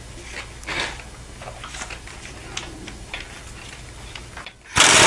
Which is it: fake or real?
real